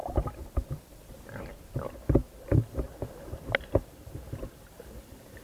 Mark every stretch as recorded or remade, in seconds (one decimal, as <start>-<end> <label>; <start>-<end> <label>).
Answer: 0.0-5.4 recorded